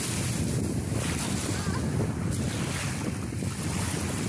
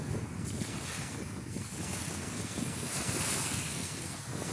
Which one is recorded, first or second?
first